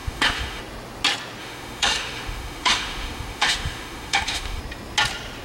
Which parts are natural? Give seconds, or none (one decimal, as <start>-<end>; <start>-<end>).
0.6-1.4; 4.6-5.4